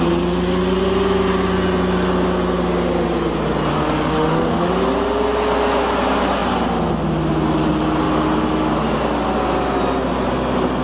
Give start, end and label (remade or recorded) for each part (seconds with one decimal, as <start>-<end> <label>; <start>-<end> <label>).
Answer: 0.0-3.7 recorded; 3.7-4.7 remade; 4.7-10.8 recorded